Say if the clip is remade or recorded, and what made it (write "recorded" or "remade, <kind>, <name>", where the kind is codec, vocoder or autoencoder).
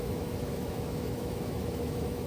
remade, autoencoder, DAC-VAE